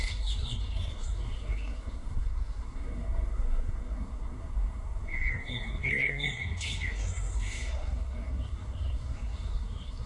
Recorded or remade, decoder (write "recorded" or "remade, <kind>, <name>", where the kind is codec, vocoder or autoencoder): remade, codec, SNAC